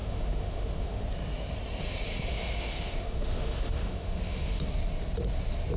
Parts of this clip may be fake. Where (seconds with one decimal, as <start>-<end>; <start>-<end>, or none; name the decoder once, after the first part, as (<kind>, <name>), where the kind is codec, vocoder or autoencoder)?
0.0-1.0 (autoencoder, DAC-VAE); 2.3-4.6

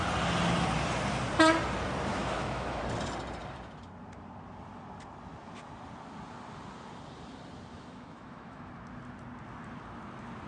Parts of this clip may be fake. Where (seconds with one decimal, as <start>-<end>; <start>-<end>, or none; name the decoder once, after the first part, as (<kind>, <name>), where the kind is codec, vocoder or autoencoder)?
2.1-2.8 (autoencoder, DAC-VAE); 7.7-8.7

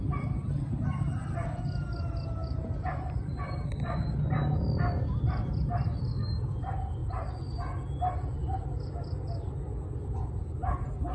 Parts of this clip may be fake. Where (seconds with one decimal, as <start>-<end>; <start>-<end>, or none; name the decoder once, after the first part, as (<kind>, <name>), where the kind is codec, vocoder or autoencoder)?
none